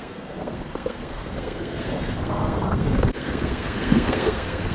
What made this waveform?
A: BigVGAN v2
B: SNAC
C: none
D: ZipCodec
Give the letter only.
B